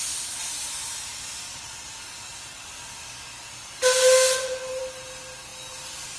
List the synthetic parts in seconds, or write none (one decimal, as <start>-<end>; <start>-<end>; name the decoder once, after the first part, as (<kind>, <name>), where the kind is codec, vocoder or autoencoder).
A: none